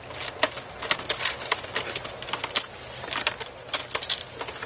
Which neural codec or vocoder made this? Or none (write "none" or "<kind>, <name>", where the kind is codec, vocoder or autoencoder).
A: none